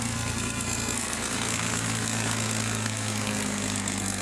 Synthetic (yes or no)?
yes